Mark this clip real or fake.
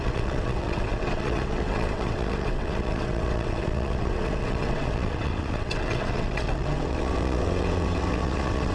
fake